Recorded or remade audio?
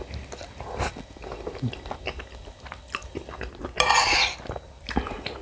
recorded